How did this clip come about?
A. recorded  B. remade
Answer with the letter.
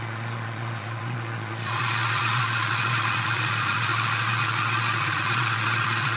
B